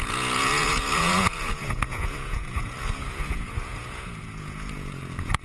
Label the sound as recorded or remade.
remade